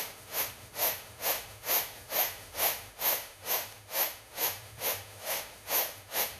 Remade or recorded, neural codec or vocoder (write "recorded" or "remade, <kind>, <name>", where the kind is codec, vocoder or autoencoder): remade, autoencoder, DAC-VAE